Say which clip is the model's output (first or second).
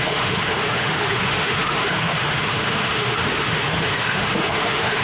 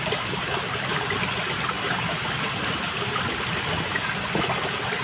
first